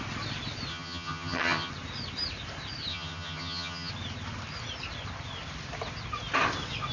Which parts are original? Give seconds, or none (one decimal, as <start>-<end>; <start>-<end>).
0.0-0.7; 1.7-2.9; 3.9-6.9